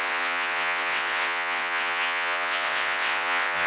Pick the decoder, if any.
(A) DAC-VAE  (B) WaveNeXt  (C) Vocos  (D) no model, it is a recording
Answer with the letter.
B